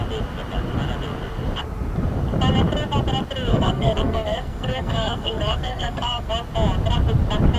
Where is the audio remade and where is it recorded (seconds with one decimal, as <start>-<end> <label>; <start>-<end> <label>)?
0.0-3.5 recorded; 3.5-6.3 remade; 6.3-7.6 recorded